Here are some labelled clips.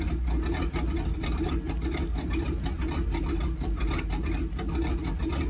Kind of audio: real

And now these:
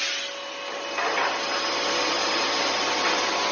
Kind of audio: real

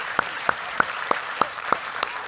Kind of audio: fake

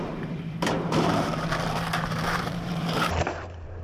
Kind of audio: fake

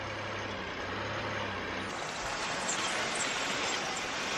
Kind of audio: real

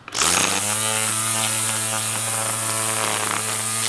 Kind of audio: real